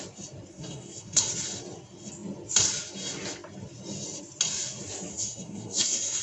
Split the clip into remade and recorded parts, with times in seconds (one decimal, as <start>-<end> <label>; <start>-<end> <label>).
0.0-0.5 recorded; 0.5-1.3 remade; 1.3-5.1 recorded; 5.1-6.2 remade